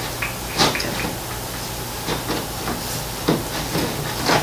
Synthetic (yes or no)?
no